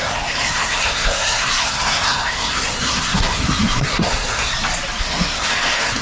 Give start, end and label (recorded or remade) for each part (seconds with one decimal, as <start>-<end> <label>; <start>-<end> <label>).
0.0-4.5 remade; 4.5-5.0 recorded; 5.0-6.0 remade